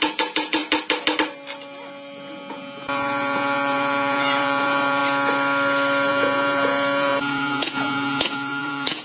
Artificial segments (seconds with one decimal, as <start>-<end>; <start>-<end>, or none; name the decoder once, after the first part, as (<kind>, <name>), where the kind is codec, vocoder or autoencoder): 0.0-0.6 (vocoder, Vocos); 2.5-5.0; 6.1-9.0